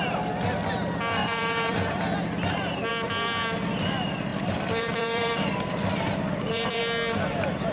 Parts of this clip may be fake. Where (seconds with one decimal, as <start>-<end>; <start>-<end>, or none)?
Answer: 1.2-2.0; 4.3-6.8